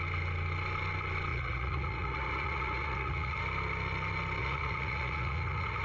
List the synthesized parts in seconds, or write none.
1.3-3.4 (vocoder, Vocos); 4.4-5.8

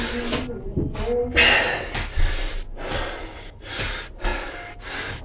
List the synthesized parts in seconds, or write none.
none

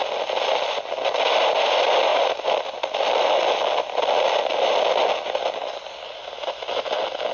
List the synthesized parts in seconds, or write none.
none